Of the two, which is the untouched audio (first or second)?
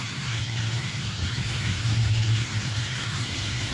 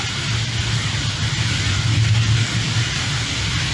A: second